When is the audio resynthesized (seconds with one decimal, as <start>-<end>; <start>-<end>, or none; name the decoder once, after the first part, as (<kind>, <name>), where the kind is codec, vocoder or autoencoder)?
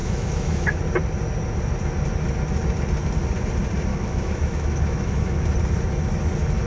0.0-0.8 (autoencoder, DAC-VAE); 3.9-5.4